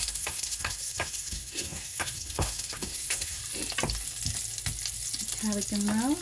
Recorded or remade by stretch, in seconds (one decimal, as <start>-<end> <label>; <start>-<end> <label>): 0.0-3.4 remade; 3.4-6.2 recorded